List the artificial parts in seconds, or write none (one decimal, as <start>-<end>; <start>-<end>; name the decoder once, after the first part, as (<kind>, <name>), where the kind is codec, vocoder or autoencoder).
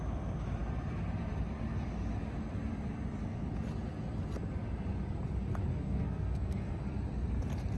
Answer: 5.7-6.8 (codec, SNAC)